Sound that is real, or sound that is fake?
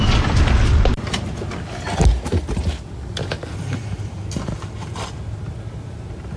real